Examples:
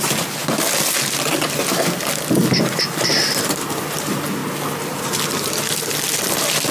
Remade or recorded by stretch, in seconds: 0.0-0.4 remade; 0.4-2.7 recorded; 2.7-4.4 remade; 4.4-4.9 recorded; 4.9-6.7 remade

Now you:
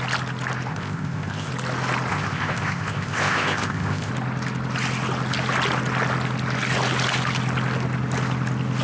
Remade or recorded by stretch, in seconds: 0.0-0.7 recorded; 0.7-1.5 remade; 1.5-2.1 recorded; 2.1-4.1 remade; 4.1-8.8 recorded

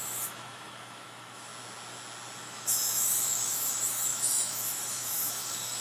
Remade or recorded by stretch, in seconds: 0.0-1.5 remade; 1.5-2.4 recorded; 2.4-5.8 remade

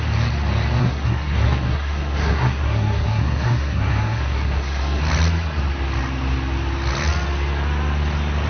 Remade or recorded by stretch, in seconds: 0.0-0.8 recorded; 0.8-5.0 remade; 5.0-8.5 recorded